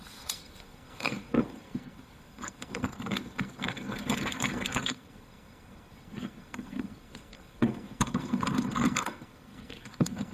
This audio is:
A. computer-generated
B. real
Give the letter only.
A